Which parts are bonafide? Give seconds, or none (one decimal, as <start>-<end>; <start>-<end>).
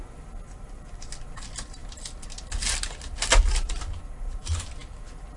0.0-5.4